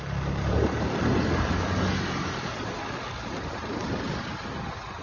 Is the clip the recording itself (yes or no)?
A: yes